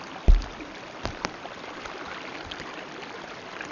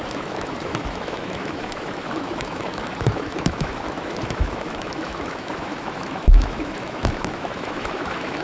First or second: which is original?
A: first